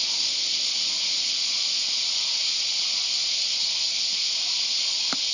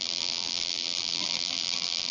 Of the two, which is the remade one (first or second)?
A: second